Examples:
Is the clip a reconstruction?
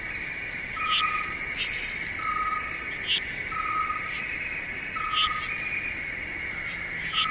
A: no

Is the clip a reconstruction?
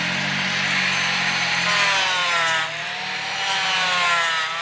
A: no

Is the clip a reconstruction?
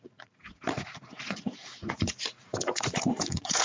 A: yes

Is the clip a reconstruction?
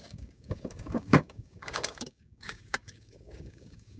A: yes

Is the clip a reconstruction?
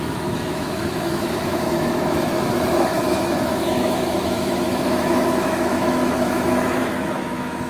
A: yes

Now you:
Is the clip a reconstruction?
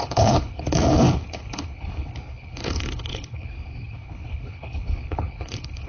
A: yes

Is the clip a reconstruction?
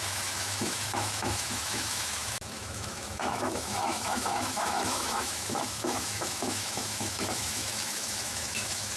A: yes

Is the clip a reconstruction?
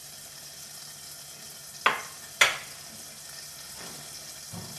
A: no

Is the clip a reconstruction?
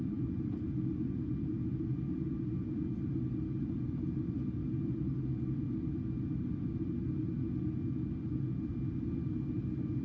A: no